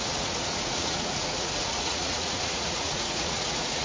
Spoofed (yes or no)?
yes